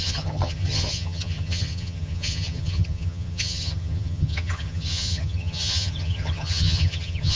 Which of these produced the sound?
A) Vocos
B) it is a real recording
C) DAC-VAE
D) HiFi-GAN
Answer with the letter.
D